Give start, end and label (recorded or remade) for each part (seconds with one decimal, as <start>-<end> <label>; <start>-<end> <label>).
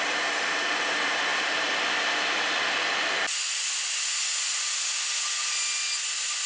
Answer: 0.0-1.3 recorded; 1.3-4.1 remade; 4.1-6.5 recorded